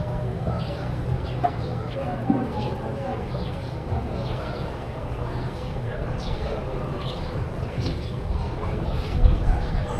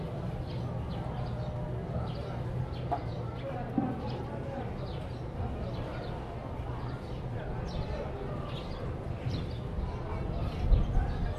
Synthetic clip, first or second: first